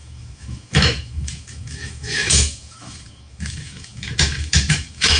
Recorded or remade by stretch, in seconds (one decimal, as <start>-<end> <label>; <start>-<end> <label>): 0.0-5.2 remade